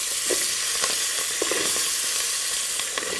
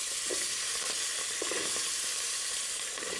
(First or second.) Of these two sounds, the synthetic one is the second